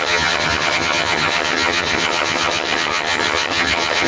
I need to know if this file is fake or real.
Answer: fake